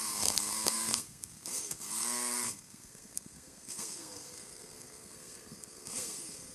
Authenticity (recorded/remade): remade